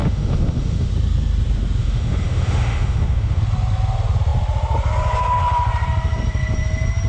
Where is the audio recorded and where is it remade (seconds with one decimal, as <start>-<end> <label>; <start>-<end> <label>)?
0.0-0.9 remade; 0.9-1.8 recorded; 1.8-3.4 remade; 3.4-7.1 recorded